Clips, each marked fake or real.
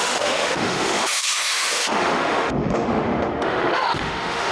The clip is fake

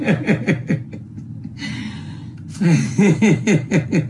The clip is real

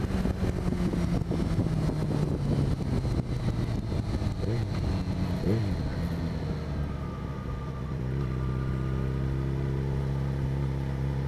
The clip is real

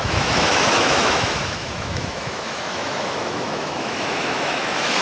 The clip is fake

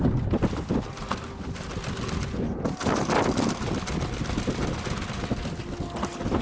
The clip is real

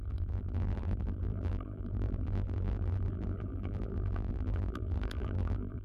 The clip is fake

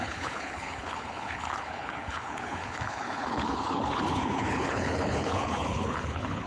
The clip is fake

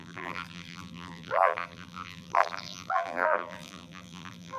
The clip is fake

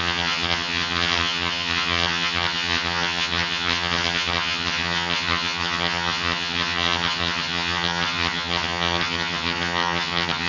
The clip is fake